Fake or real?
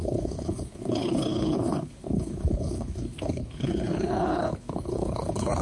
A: fake